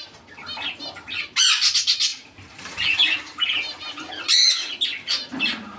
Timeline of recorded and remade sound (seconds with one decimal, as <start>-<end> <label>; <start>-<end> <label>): 0.0-5.8 recorded